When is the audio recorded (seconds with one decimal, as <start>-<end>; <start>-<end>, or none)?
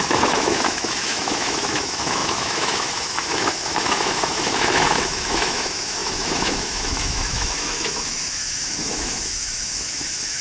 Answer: none